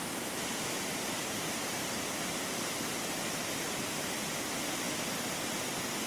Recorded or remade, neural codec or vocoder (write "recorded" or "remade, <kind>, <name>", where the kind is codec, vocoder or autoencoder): recorded